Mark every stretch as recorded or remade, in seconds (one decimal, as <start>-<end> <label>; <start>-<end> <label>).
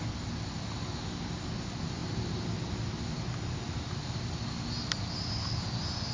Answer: 0.0-6.1 recorded